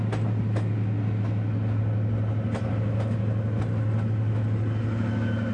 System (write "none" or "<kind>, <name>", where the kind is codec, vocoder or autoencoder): none